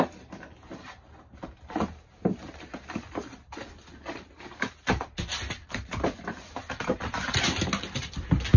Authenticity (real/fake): real